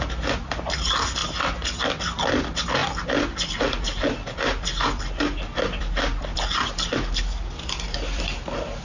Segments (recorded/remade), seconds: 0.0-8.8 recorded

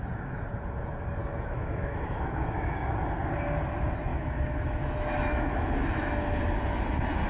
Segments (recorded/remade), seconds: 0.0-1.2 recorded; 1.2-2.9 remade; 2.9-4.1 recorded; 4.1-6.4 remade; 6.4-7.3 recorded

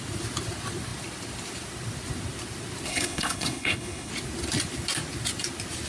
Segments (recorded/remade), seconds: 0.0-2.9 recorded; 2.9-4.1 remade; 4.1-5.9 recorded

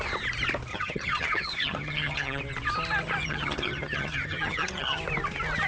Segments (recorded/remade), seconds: 0.0-0.7 recorded; 0.7-2.4 remade; 2.4-3.2 recorded; 3.2-5.0 remade; 5.0-5.7 recorded